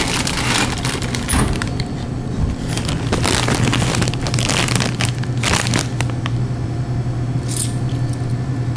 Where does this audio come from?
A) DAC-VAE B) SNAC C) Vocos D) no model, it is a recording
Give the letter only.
D